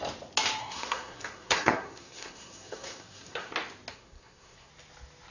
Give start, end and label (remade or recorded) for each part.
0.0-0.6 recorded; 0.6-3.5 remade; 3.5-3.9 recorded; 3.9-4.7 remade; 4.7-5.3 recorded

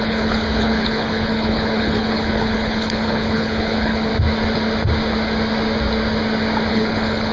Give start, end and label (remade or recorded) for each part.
0.0-4.1 remade; 4.1-6.7 recorded; 6.7-7.3 remade

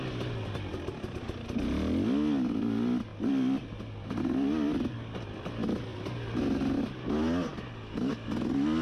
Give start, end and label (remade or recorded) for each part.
0.0-8.8 recorded

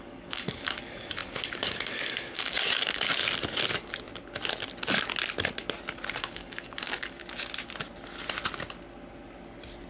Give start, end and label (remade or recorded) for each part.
0.0-3.2 remade; 3.2-6.2 recorded; 6.2-7.2 remade; 7.2-9.9 recorded

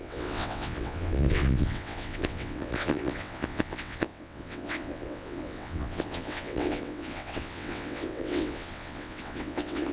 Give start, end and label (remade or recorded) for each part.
0.0-9.9 remade

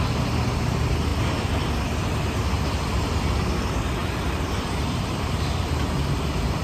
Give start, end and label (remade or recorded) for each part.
0.0-4.0 recorded; 4.0-5.6 remade; 5.6-6.6 recorded

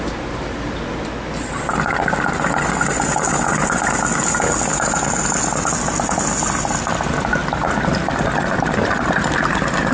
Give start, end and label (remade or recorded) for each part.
0.0-9.9 recorded

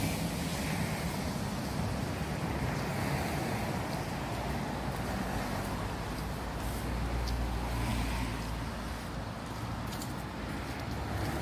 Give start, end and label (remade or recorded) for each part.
0.0-11.4 recorded